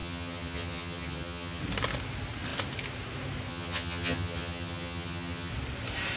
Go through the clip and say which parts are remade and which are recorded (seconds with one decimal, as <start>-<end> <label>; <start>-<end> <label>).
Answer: 0.0-1.6 remade; 1.6-3.5 recorded; 3.5-5.5 remade; 5.5-6.2 recorded